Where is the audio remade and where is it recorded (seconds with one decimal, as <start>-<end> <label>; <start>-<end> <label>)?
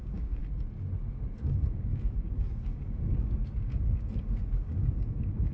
0.0-0.4 remade; 0.4-1.4 recorded; 1.4-5.5 remade